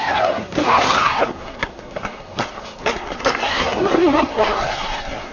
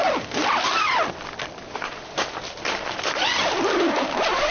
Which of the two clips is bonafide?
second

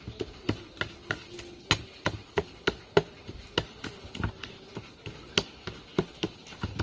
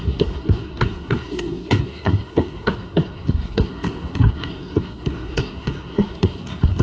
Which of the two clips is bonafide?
first